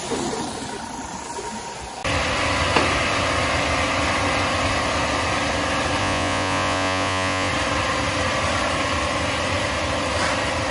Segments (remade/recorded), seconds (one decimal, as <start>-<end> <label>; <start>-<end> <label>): 0.0-6.0 recorded; 6.0-7.5 remade; 7.5-10.7 recorded